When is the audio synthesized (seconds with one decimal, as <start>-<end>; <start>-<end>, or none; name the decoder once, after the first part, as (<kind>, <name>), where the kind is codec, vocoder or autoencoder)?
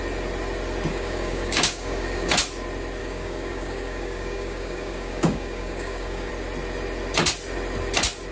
0.9-2.3 (codec, DAC); 3.0-6.3